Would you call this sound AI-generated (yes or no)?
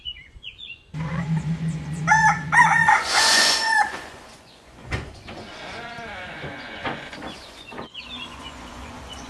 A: yes